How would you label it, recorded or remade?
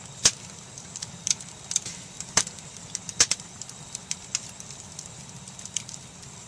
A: recorded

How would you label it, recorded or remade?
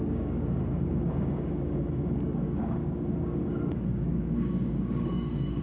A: remade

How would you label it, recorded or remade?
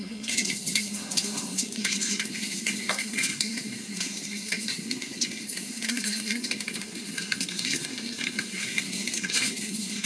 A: remade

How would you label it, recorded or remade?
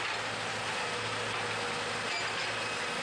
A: recorded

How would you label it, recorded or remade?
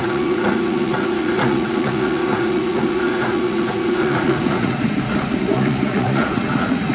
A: remade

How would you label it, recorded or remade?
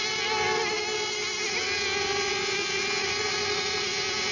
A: recorded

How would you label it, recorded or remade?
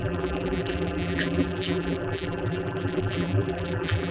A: remade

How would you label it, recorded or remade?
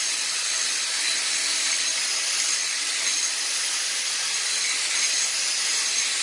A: recorded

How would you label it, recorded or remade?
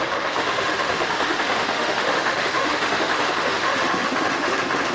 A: remade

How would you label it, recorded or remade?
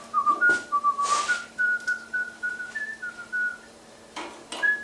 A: recorded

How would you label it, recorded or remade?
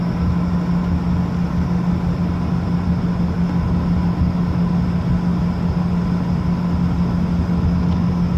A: recorded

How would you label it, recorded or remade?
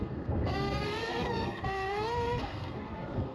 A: remade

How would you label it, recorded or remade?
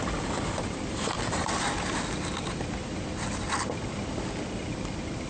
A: recorded